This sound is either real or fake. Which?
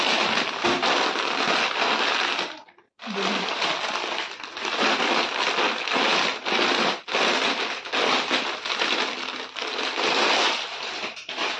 real